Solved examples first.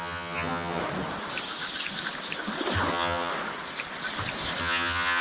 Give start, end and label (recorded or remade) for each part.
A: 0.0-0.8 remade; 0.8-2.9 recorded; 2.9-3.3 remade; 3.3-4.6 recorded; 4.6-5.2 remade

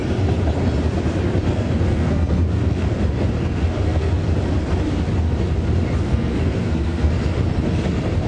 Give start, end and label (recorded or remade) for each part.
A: 0.0-1.5 recorded; 1.5-3.0 remade; 3.0-3.4 recorded; 3.4-4.1 remade; 4.1-6.1 recorded; 6.1-7.1 remade; 7.1-8.3 recorded

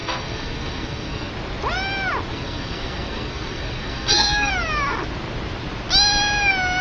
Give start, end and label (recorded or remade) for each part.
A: 0.0-1.3 remade; 1.3-2.3 recorded; 2.3-4.5 remade; 4.5-6.8 recorded

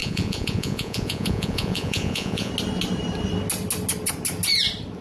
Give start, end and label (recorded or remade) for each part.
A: 0.0-2.5 remade; 2.5-5.0 recorded

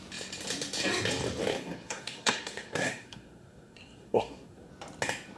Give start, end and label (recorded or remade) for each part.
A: 0.0-1.5 recorded; 1.5-4.7 remade; 4.7-5.4 recorded

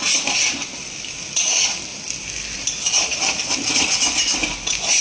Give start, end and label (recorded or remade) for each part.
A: 0.0-4.4 recorded; 4.4-5.0 remade

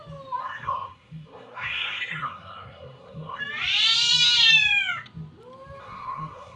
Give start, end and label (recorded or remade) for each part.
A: 0.0-0.4 recorded; 0.4-3.4 remade; 3.4-5.8 recorded; 5.8-6.6 remade